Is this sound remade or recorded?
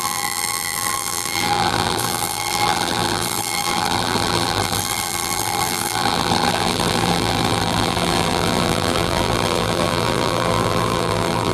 remade